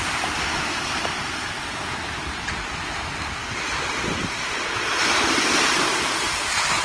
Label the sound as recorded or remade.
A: recorded